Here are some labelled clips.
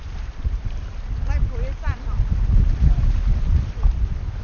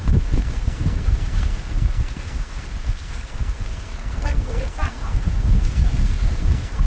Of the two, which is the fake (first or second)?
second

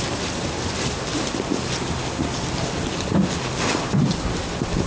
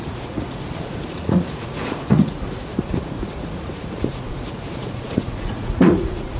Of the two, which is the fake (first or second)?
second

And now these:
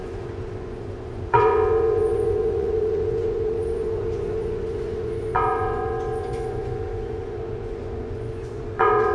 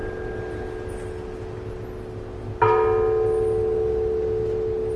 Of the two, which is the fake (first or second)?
first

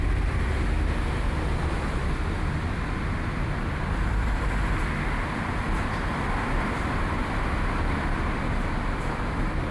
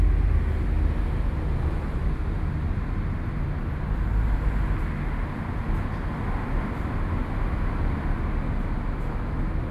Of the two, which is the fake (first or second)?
first